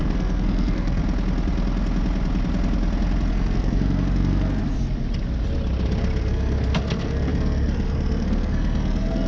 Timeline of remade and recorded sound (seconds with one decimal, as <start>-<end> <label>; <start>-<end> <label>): 0.0-1.0 remade; 1.0-3.3 recorded; 3.3-4.6 remade; 4.6-6.2 recorded; 6.2-9.3 remade